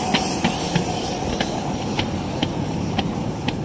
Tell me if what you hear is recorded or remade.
recorded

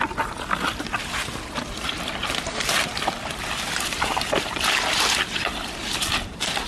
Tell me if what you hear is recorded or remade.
recorded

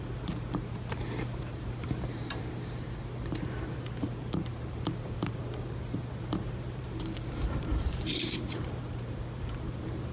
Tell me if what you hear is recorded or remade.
remade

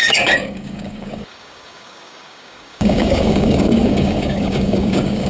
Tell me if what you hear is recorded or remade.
remade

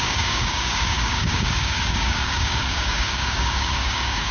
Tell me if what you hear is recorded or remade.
remade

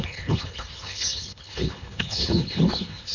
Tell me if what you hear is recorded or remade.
remade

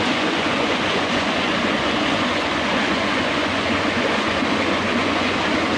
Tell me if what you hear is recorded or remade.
remade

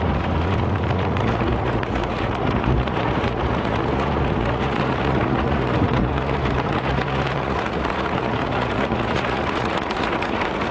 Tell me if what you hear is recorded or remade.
remade